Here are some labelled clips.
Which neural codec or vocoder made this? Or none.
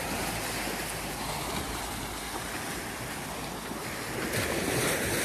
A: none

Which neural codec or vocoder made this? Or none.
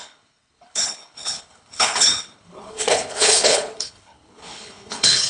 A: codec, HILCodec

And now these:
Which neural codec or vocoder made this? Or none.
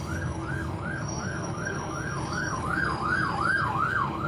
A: codec, DAC